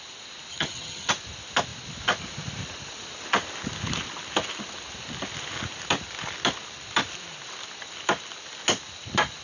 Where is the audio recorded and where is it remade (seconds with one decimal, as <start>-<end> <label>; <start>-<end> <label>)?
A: 0.0-0.5 recorded; 0.5-1.1 remade; 1.1-9.4 recorded